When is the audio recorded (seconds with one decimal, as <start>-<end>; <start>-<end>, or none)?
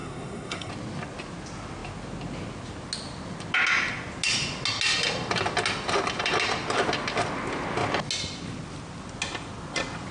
0.7-10.1